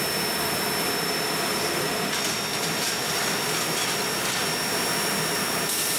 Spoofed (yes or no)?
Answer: no